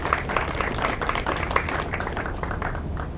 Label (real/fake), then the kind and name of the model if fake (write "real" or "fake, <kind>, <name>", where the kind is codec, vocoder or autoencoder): real